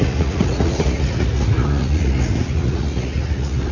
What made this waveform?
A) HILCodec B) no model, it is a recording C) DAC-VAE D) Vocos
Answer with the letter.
D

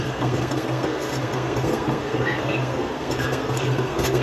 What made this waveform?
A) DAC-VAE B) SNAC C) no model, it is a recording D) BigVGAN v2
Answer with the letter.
B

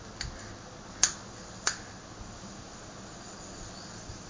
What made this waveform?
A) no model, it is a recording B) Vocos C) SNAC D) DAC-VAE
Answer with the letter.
A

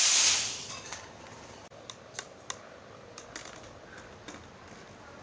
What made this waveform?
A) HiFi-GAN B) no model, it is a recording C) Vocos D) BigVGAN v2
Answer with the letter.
B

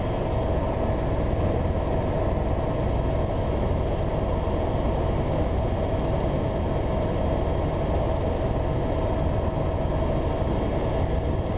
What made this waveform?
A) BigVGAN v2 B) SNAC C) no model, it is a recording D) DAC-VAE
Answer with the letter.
C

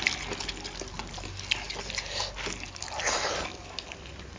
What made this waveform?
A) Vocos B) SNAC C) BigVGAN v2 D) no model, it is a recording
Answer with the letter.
D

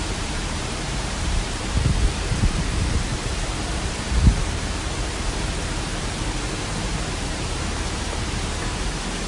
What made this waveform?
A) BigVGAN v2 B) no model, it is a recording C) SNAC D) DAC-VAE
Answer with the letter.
A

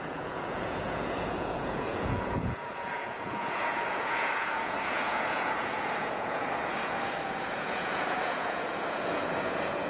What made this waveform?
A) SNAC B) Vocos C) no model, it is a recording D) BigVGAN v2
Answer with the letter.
B